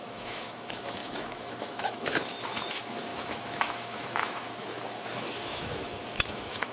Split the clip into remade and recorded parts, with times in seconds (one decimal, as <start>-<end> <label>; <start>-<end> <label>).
0.0-6.7 remade